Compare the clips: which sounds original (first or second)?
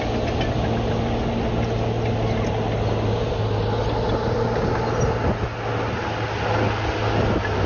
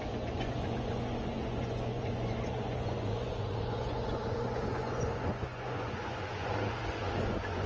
first